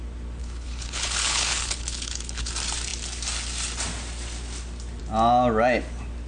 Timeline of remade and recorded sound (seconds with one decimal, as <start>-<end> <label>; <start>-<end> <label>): 0.0-0.4 recorded; 0.4-2.5 remade; 2.5-6.3 recorded